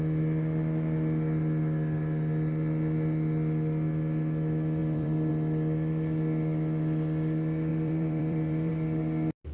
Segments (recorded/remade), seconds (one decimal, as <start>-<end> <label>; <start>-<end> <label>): 0.0-4.8 recorded; 4.8-5.3 remade; 5.3-7.7 recorded; 7.7-8.7 remade; 8.7-9.5 recorded